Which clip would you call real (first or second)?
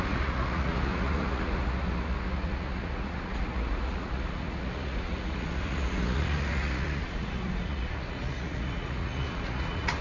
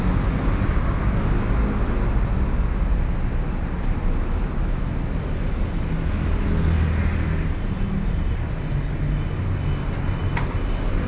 second